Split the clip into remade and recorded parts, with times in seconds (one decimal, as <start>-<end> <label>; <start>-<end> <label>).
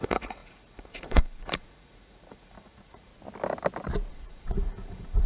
0.0-3.1 remade; 3.1-4.1 recorded; 4.1-5.3 remade